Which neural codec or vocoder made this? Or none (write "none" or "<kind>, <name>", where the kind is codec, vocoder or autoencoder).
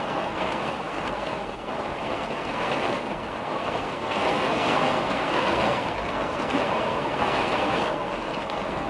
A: codec, SNAC